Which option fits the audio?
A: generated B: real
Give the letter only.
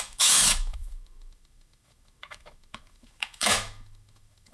A